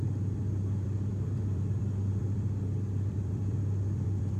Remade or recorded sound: remade